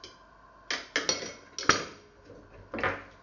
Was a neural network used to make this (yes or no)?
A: no